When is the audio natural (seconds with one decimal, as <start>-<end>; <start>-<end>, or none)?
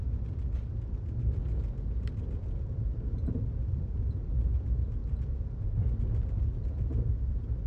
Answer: 0.0-7.7